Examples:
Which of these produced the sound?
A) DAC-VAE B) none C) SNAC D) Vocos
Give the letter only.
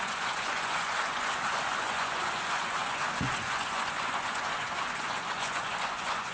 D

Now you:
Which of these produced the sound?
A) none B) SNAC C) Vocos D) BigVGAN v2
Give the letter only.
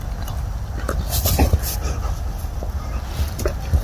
A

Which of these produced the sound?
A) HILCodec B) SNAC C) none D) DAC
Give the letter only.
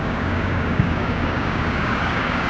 D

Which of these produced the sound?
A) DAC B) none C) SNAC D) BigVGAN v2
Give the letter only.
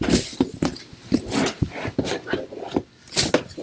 B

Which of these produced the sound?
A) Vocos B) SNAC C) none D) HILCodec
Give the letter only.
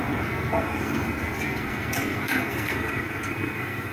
B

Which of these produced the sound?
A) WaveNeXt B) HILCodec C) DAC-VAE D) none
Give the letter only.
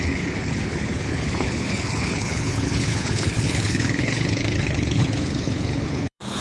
B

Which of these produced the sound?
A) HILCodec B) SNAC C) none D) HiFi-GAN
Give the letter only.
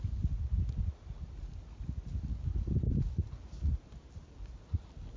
C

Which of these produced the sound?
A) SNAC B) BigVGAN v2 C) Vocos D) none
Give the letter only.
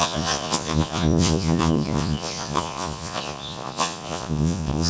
C